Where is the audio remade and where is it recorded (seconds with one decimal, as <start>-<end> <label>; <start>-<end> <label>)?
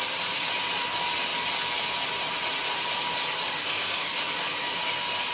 0.0-3.6 recorded; 3.6-4.2 remade; 4.2-5.3 recorded